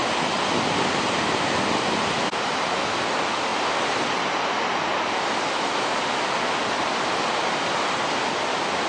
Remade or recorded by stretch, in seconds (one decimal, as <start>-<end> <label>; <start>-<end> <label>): 0.0-8.9 recorded